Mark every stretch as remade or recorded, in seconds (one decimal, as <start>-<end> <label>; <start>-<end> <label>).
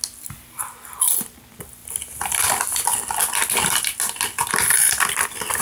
0.0-5.6 recorded